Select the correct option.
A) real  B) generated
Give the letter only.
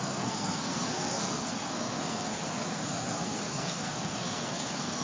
B